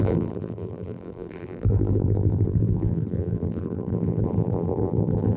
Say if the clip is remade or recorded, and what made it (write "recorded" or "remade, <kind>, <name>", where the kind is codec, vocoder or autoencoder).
remade, vocoder, BigVGAN v2